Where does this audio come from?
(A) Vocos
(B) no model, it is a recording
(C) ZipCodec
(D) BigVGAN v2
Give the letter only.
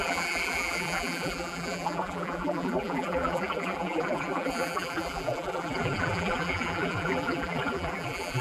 D